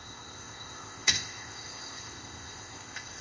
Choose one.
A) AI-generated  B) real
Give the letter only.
A